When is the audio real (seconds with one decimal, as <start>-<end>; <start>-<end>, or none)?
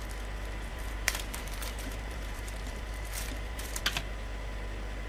0.0-0.7; 3.8-5.1